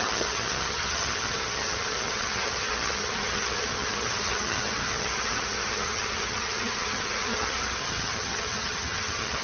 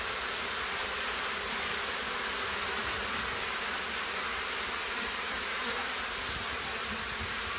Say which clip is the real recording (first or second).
second